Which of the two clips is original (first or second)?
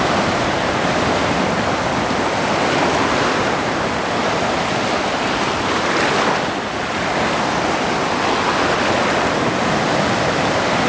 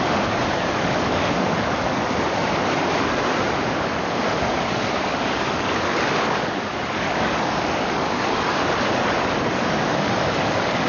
first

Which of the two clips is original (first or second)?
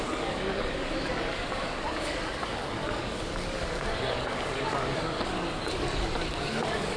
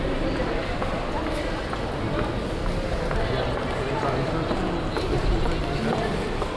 second